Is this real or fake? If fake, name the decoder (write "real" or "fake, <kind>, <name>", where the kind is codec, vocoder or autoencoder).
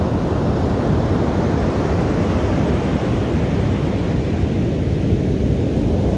real